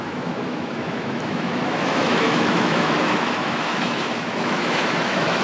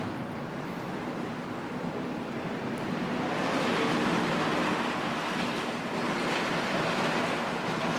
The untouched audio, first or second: second